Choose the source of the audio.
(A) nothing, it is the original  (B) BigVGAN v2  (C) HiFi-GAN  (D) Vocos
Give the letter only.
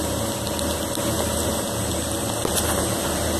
A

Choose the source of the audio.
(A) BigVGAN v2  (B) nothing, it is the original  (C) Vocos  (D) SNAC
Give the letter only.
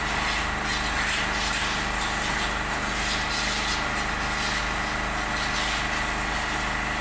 B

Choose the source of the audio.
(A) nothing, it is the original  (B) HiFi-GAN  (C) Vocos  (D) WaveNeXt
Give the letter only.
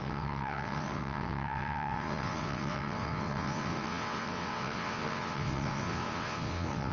D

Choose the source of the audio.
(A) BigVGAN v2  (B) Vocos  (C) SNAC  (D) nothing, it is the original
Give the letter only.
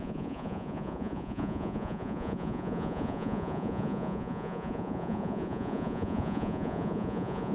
B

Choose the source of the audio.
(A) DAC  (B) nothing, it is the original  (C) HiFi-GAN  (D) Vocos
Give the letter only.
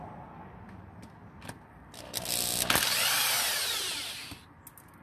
B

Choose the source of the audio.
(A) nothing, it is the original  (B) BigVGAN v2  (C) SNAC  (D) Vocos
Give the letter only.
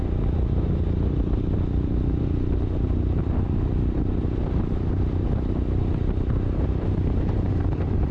B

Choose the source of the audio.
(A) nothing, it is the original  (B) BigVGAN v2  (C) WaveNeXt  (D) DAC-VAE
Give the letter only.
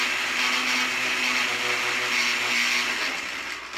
A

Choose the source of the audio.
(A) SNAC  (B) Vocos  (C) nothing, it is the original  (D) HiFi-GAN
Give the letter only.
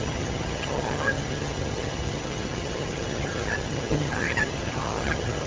D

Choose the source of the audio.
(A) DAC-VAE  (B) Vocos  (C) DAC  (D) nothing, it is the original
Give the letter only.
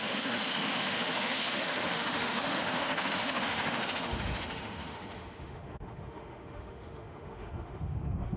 A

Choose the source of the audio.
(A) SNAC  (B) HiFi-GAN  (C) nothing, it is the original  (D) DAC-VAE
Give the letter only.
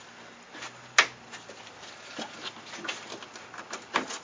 C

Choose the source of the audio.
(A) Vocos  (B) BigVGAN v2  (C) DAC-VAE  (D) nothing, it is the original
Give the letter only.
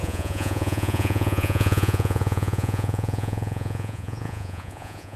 A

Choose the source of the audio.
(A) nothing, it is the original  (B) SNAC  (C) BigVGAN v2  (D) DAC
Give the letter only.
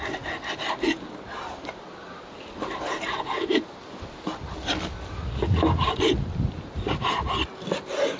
A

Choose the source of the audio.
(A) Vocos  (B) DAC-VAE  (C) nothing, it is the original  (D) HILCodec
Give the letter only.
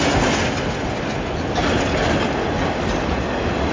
C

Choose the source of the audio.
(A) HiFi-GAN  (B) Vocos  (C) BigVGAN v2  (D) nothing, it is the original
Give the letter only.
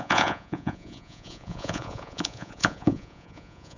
B